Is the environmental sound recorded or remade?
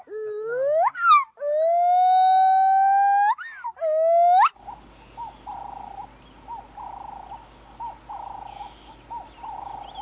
recorded